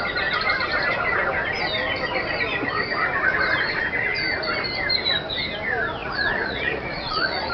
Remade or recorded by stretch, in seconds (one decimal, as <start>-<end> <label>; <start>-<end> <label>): 0.0-6.0 recorded; 6.0-7.5 remade